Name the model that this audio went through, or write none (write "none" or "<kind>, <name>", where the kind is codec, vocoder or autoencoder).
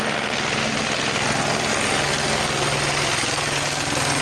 none